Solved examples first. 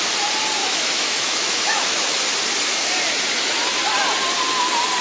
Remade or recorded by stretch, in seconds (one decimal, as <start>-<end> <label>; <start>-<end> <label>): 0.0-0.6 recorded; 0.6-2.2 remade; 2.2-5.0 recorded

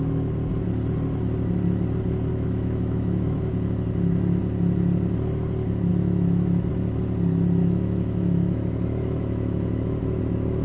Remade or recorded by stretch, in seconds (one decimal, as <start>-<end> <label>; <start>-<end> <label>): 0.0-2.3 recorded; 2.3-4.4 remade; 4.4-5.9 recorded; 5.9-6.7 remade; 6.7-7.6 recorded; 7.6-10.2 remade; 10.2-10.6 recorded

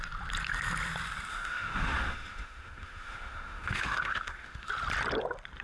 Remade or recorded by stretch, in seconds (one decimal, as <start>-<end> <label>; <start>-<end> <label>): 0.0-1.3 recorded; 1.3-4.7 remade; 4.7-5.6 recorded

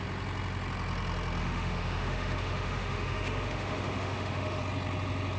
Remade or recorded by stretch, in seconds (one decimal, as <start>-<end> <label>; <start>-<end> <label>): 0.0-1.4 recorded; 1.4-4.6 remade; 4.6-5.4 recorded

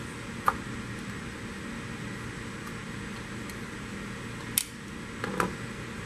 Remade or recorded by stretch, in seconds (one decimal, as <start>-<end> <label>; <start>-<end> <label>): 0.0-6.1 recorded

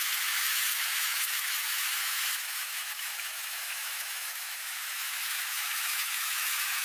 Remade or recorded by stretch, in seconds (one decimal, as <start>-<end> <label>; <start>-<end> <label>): 0.0-6.8 remade